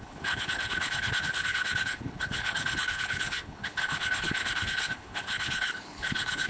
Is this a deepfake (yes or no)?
yes